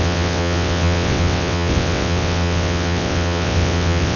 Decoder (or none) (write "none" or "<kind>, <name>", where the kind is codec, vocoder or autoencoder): vocoder, WaveNeXt